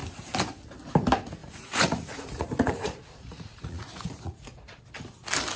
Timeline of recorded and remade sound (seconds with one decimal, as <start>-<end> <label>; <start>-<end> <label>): 0.0-1.4 recorded; 1.4-4.8 remade; 4.8-5.6 recorded